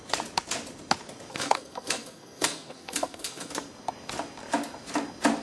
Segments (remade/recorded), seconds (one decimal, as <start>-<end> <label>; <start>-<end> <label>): 0.0-1.3 recorded; 1.3-3.5 remade; 3.5-5.4 recorded